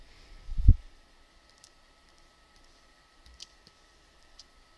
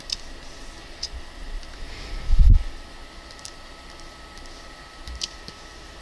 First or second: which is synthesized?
first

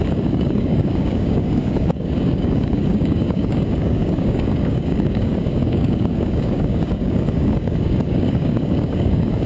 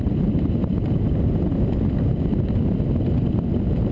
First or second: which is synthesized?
first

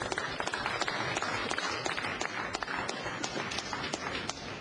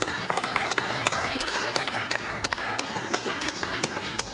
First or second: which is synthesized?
second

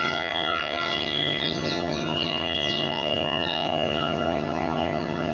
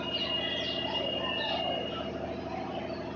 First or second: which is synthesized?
first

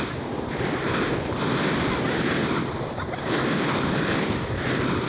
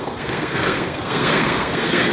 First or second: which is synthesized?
second